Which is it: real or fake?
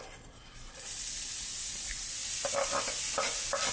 fake